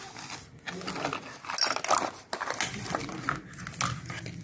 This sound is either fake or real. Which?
real